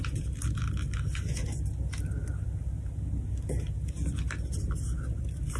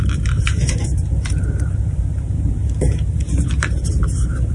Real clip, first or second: first